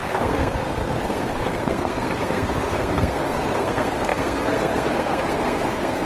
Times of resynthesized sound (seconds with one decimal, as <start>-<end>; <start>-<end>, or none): 0.0-6.1